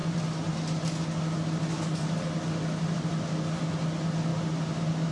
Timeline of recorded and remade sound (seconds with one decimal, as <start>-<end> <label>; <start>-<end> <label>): 0.0-5.1 recorded